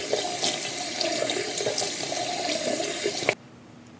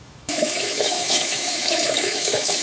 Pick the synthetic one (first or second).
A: second